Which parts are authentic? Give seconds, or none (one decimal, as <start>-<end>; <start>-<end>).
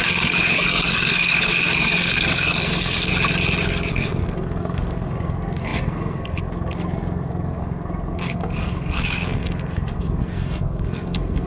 3.1-3.9